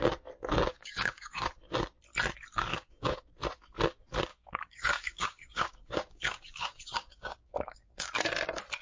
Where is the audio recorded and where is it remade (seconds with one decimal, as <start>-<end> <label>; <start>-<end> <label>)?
0.0-0.7 recorded; 0.7-1.5 remade; 1.5-2.7 recorded; 2.7-3.3 remade; 3.3-4.3 recorded; 4.3-8.1 remade; 8.1-8.8 recorded